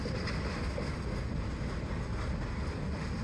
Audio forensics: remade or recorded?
recorded